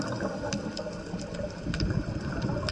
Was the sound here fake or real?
real